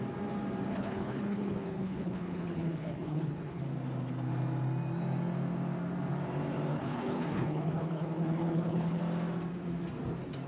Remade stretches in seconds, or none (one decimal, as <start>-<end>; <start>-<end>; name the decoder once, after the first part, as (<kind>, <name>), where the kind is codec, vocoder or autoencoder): 0.7-3.6 (codec, HILCodec); 6.7-9.0